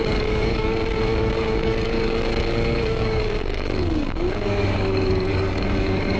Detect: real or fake fake